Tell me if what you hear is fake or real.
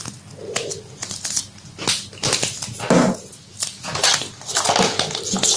real